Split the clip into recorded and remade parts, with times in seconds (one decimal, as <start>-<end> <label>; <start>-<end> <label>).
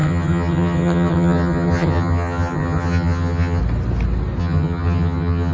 0.0-3.6 remade; 3.6-4.4 recorded; 4.4-5.5 remade